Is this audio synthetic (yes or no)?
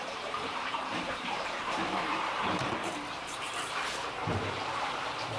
yes